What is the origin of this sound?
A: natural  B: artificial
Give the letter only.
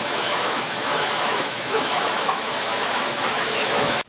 B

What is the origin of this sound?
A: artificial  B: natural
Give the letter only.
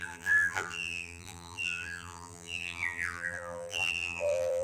A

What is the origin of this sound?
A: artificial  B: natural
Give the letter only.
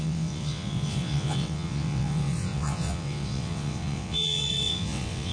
A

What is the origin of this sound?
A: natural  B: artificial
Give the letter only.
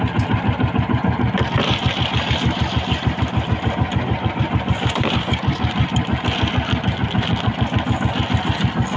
A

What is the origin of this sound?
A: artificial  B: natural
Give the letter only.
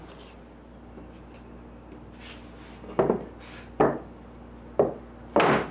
B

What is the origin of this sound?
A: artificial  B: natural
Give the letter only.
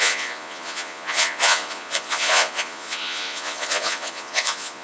A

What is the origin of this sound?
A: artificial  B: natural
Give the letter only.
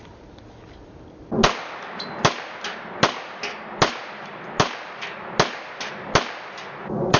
B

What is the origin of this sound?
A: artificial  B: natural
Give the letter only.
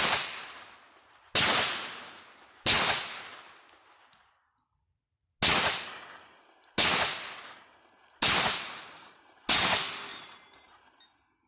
B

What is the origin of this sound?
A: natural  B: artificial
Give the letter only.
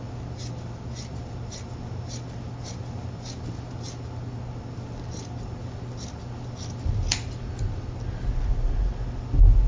A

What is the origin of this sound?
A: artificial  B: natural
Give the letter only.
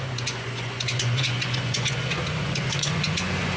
A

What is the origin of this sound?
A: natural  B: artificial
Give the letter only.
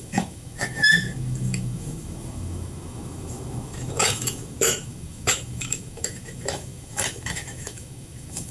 B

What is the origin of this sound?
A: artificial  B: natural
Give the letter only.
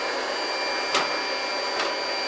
B